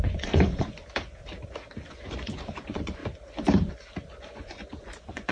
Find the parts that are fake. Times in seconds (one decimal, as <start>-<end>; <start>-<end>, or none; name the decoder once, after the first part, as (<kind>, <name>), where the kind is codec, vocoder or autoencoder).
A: 0.0-0.8 (vocoder, Vocos); 1.9-3.0; 4.2-5.3